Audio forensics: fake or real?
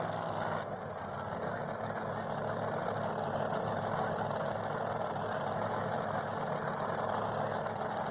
real